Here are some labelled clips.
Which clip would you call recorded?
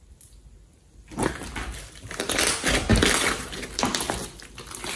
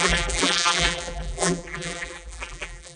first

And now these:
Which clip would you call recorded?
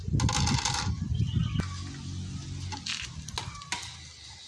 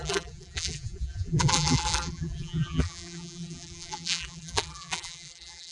first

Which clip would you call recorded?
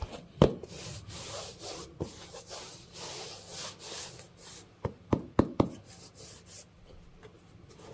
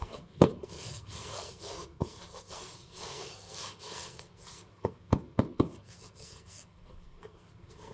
first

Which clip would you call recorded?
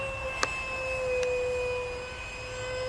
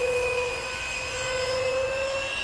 first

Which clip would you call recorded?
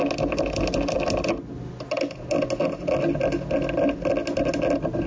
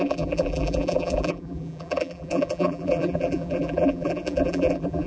first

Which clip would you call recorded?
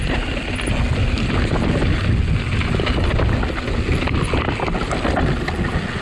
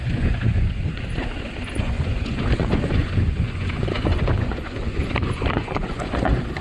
first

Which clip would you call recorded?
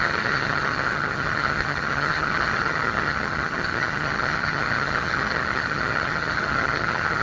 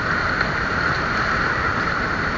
second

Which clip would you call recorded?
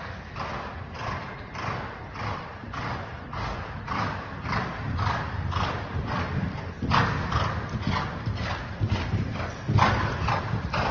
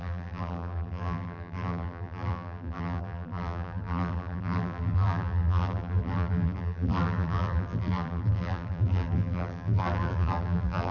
first